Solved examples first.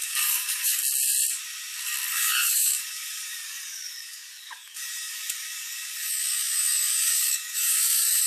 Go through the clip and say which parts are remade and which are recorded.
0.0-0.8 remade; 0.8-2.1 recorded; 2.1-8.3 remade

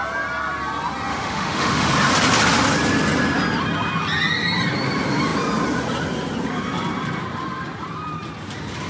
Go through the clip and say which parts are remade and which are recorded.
0.0-1.1 recorded; 1.1-1.9 remade; 1.9-8.9 recorded